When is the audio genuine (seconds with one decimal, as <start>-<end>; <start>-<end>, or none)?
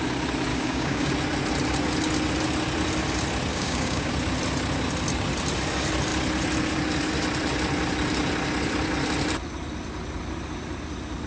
0.0-0.5; 1.1-3.5; 4.1-11.3